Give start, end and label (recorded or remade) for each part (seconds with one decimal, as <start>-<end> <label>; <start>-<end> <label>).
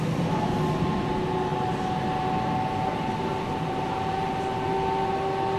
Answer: 0.0-5.6 recorded